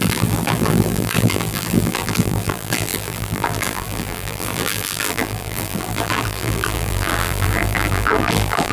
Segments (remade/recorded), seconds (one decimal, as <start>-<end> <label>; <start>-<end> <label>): 0.0-8.7 remade